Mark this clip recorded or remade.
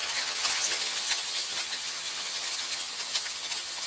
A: remade